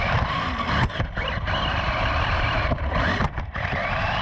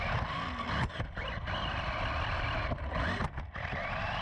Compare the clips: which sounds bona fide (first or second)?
second